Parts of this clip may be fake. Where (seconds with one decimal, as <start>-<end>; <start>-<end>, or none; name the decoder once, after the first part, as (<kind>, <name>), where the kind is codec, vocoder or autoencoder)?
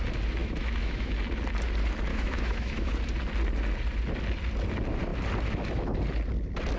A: 0.4-1.1 (autoencoder, DAC-VAE); 2.1-2.9